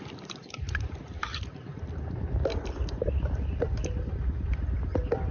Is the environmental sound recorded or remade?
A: remade